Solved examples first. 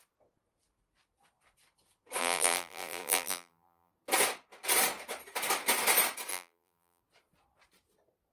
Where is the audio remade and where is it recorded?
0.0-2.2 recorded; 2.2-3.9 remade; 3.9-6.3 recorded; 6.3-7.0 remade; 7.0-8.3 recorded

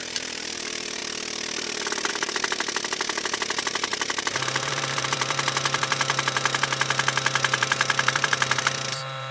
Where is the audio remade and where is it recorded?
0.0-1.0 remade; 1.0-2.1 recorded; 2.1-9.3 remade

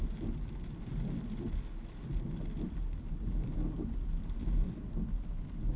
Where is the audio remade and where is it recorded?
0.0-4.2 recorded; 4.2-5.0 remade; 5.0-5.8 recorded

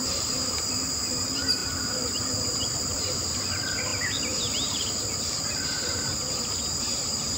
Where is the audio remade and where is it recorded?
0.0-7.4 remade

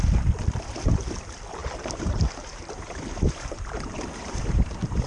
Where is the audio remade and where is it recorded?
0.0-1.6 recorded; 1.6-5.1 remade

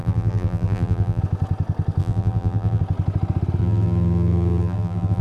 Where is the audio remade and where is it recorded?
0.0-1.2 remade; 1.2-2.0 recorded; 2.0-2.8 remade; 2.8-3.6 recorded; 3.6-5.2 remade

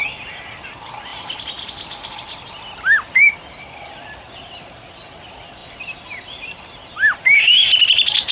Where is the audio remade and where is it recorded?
0.0-5.6 recorded; 5.6-7.2 remade; 7.2-8.3 recorded